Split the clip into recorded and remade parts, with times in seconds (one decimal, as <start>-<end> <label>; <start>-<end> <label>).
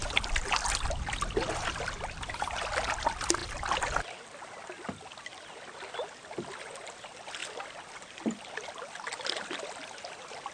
0.0-10.5 recorded